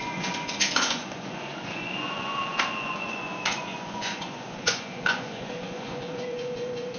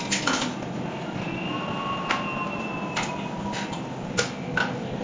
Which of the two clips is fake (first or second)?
first